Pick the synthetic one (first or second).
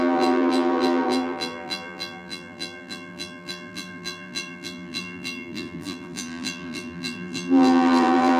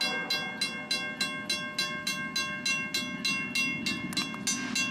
first